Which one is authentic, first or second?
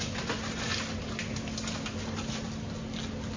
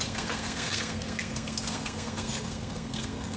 first